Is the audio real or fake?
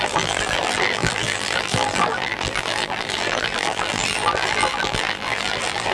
fake